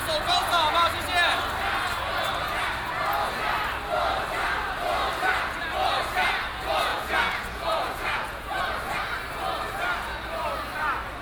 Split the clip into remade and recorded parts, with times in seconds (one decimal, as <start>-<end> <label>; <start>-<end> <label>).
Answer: 0.0-6.9 recorded; 6.9-8.6 remade; 8.6-11.2 recorded